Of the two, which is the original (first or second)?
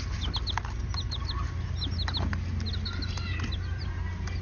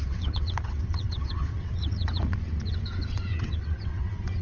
first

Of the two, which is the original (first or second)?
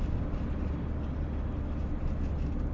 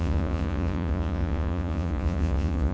first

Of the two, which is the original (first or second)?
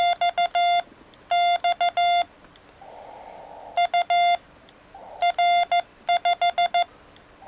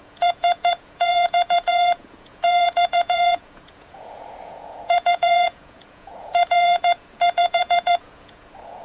first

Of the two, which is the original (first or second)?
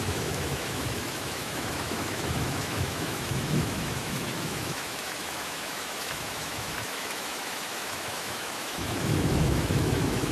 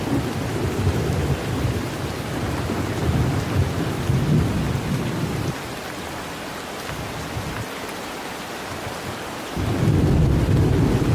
second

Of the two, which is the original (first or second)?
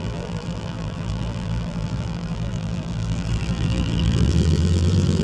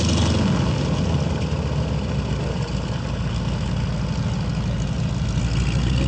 second